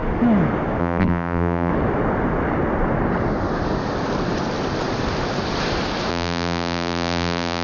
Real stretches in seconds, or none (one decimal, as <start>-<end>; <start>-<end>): 0.0-0.8; 1.7-6.1